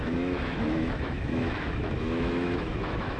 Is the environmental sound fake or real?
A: fake